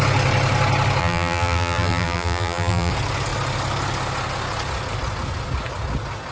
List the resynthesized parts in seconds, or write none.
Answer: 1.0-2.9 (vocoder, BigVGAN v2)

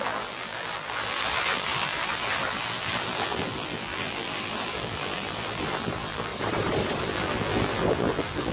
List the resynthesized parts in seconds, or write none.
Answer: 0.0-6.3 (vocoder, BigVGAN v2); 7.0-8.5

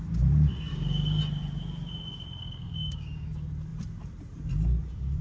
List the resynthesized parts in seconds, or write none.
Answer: 0.7-1.2 (codec, DAC); 2.4-3.3

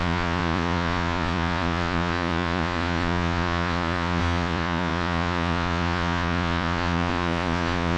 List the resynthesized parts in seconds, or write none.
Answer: 0.0-8.0 (vocoder, Vocos)

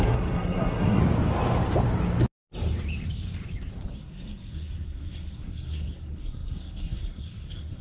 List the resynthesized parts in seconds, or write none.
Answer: 0.0-1.0 (codec, SNAC); 3.9-7.8

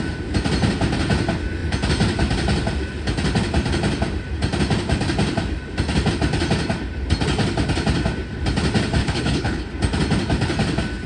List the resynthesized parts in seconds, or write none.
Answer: 9.0-9.7 (codec, HILCodec)